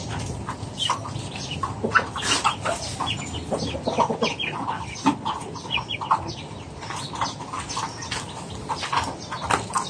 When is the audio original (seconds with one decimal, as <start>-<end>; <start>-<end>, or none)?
0.0-9.9